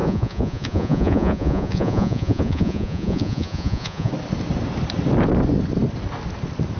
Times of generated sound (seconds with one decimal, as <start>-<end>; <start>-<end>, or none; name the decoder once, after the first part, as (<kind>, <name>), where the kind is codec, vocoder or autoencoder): 0.0-4.1 (vocoder, Vocos)